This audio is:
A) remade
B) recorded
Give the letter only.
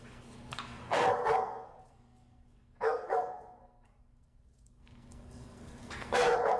A